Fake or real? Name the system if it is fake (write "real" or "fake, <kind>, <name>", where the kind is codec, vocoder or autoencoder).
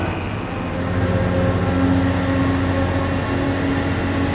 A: real